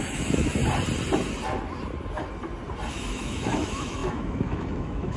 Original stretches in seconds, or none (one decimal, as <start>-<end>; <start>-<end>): 0.6-2.9